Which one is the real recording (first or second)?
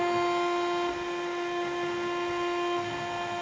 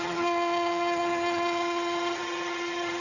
first